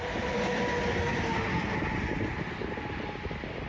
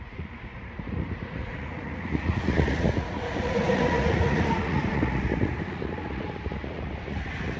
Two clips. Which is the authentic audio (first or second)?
first